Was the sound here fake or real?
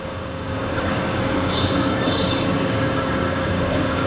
fake